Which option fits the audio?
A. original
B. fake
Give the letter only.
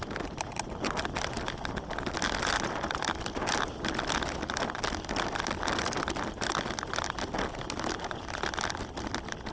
A